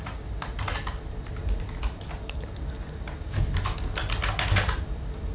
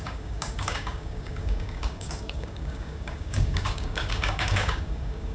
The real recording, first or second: first